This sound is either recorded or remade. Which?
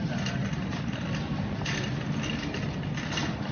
recorded